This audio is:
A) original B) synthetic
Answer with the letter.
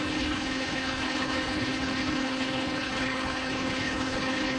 B